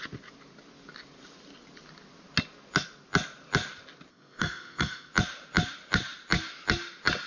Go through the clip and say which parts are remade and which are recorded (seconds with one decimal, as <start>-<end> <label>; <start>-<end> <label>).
0.0-4.1 recorded; 4.1-5.1 remade; 5.1-7.3 recorded